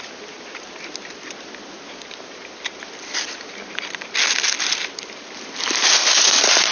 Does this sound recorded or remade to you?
recorded